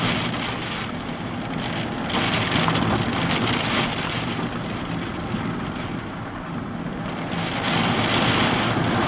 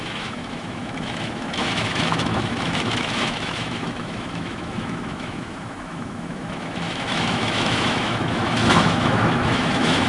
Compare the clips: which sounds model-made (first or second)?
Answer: second